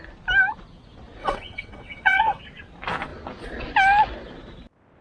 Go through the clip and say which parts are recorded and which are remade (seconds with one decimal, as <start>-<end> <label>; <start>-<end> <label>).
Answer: 0.0-1.2 recorded; 1.2-2.4 remade; 2.4-5.0 recorded